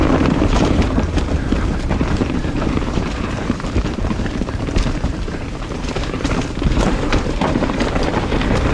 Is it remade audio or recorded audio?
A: remade